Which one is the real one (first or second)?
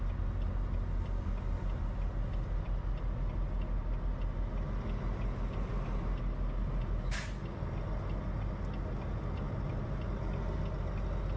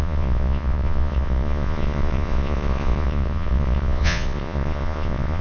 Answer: first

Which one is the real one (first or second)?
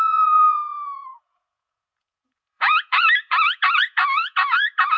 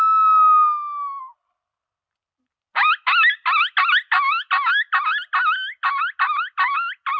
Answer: second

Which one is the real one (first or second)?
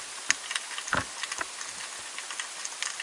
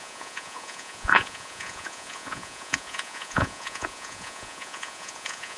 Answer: first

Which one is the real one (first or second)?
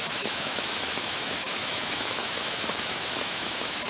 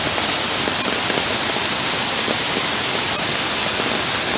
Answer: second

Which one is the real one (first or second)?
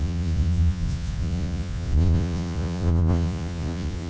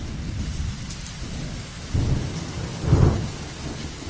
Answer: second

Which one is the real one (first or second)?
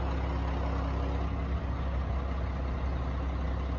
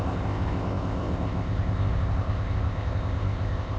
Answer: first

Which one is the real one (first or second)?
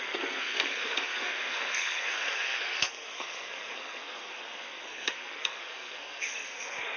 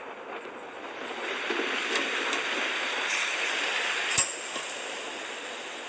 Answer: second